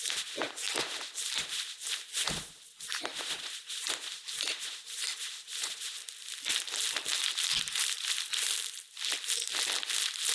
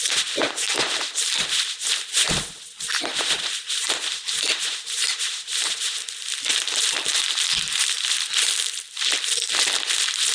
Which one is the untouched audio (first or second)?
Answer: first